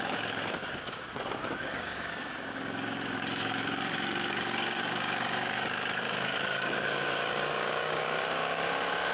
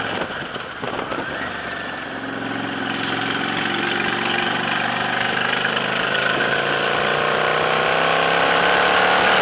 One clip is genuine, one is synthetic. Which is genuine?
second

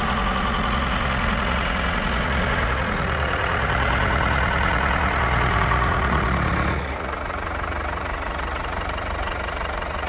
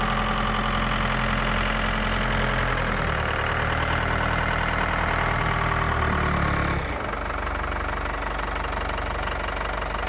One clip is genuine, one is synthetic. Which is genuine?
second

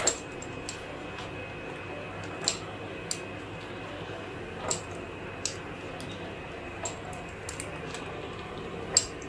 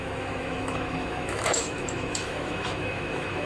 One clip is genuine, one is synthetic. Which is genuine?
first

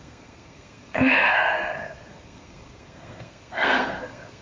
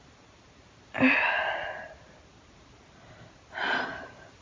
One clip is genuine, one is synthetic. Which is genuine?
second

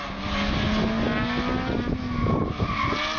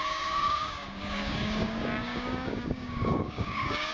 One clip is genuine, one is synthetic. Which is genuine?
first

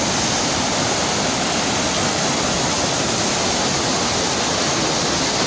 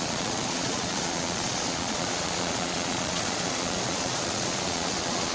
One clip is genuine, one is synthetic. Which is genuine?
first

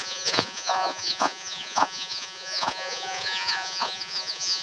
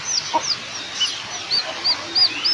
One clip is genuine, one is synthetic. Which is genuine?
second